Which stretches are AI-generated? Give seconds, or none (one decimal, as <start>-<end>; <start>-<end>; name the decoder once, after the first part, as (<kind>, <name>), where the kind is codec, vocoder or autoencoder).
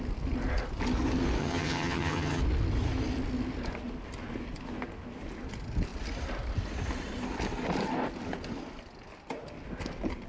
1.4-2.4 (vocoder, HiFi-GAN)